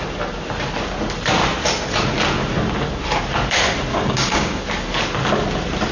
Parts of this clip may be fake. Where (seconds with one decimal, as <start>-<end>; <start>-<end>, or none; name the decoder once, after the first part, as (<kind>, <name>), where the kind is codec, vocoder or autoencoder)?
3.9-4.6 (codec, DAC)